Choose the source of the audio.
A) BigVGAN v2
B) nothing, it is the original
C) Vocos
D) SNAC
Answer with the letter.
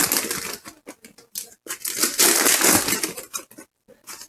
B